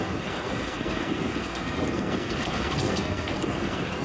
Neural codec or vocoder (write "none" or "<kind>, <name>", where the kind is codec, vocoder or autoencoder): codec, SNAC